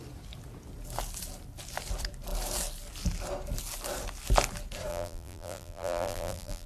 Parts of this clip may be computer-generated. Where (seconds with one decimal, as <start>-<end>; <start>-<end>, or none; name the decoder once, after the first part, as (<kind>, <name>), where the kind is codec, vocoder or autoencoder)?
4.9-6.7 (vocoder, BigVGAN v2)